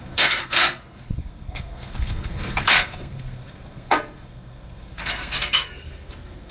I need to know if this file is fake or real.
fake